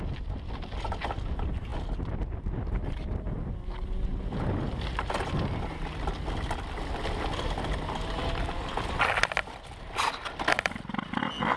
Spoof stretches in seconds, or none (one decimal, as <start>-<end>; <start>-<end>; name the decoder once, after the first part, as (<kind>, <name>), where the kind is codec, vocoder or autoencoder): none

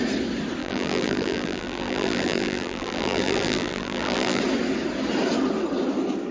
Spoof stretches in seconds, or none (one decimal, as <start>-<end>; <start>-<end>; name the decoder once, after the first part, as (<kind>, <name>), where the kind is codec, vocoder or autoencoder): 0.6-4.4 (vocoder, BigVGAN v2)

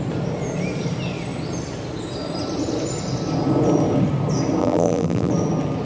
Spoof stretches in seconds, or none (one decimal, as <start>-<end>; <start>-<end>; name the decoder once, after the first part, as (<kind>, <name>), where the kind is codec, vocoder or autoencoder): 4.6-5.3 (vocoder, BigVGAN v2)